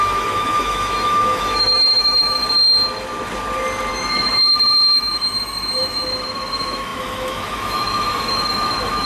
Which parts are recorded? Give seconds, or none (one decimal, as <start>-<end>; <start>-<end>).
2.4-3.9